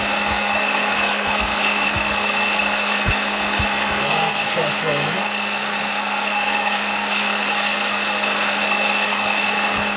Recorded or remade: remade